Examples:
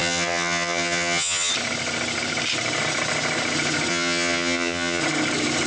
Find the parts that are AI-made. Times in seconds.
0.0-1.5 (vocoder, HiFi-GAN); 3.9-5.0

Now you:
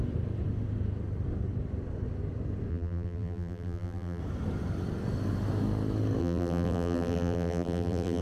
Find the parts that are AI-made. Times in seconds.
2.7-4.2 (vocoder, BigVGAN v2); 6.2-8.2

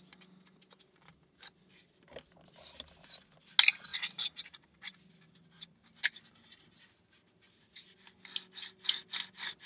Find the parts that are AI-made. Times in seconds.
none

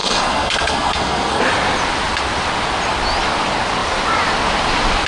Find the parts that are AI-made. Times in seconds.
0.0-1.4 (codec, SNAC)

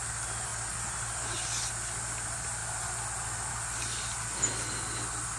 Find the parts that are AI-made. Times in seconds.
none

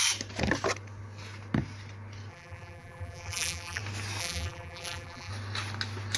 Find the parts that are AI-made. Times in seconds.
2.3-3.8 (vocoder, BigVGAN v2); 4.2-5.3

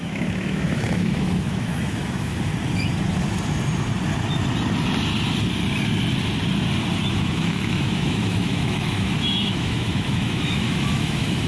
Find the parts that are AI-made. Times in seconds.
0.0-2.5 (autoencoder, DAC-VAE); 7.1-11.5